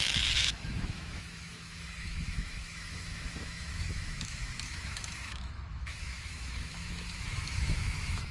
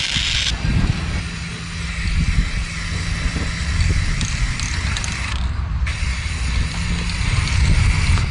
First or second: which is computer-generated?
first